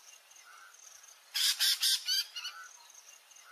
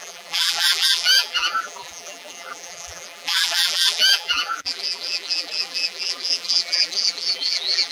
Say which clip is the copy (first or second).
second